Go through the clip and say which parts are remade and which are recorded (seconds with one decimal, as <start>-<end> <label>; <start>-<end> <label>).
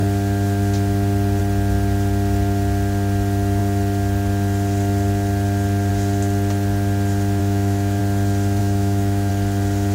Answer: 0.0-7.4 recorded; 7.4-8.0 remade; 8.0-8.6 recorded; 8.6-9.3 remade; 9.3-9.9 recorded